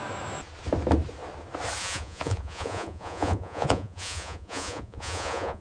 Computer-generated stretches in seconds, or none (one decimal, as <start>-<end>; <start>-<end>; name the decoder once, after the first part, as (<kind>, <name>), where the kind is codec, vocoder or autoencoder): 1.8-5.6 (vocoder, Vocos)